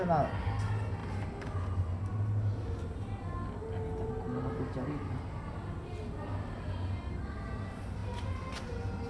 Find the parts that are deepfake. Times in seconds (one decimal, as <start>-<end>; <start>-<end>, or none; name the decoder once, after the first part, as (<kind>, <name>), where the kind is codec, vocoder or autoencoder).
none